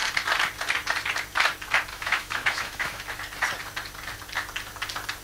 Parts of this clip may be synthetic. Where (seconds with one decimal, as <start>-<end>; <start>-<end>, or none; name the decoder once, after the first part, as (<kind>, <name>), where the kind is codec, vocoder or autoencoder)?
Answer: 1.9-3.0 (autoencoder, DAC-VAE)